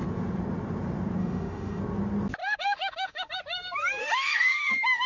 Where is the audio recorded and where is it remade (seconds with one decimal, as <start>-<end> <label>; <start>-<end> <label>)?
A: 0.0-1.2 recorded; 1.2-1.8 remade; 1.8-2.4 recorded; 2.4-3.3 remade; 3.3-4.0 recorded; 4.0-5.1 remade